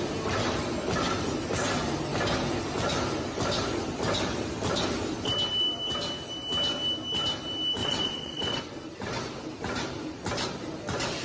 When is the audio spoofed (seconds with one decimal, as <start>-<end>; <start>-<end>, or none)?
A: 7.8-8.6